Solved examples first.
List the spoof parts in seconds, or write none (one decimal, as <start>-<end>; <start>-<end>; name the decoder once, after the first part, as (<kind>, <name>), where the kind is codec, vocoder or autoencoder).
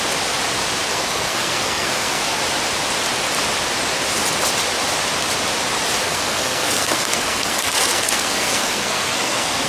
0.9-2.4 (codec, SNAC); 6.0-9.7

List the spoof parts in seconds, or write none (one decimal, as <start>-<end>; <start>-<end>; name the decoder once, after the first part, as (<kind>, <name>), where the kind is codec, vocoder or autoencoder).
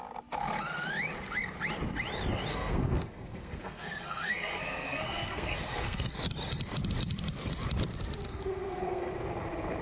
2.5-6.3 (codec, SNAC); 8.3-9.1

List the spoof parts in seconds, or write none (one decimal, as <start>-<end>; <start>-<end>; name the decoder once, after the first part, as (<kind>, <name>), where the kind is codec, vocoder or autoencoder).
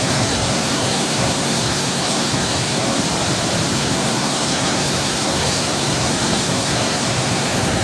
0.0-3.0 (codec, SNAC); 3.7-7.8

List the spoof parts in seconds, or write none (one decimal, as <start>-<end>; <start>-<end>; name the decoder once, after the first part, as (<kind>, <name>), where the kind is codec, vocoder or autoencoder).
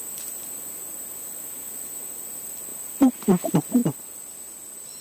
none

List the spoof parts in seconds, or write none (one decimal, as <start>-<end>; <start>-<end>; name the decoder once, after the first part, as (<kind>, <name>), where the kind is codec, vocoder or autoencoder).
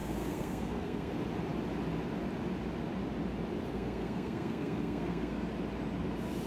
0.0-1.1 (codec, SNAC); 3.7-5.5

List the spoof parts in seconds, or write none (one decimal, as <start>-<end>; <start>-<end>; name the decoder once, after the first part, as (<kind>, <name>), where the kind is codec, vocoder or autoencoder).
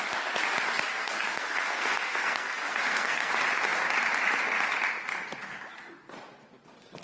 0.9-3.3 (codec, SNAC)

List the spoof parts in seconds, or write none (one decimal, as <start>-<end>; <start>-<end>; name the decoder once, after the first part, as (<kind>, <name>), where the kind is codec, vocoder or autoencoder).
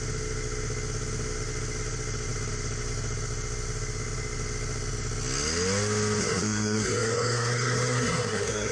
6.2-8.7 (codec, SNAC)